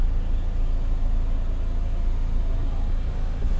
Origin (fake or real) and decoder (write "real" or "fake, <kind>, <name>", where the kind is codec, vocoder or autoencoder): real